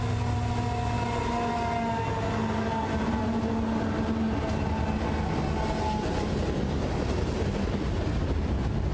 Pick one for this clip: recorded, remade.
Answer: recorded